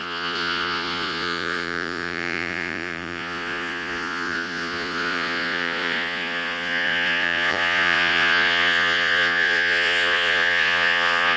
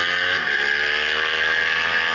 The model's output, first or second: first